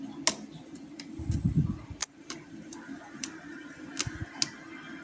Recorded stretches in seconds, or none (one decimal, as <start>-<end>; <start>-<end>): 0.0-2.0; 3.9-5.0